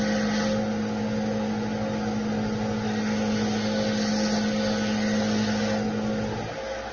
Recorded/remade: recorded